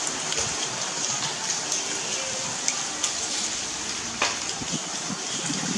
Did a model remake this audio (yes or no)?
no